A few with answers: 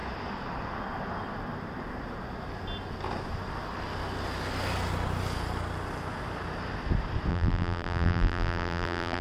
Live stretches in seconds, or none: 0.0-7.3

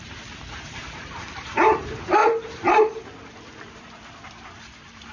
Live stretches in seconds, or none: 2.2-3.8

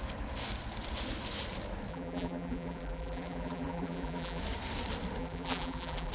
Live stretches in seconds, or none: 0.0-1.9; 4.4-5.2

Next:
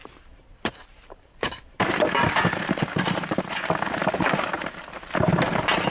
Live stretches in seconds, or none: 3.5-5.9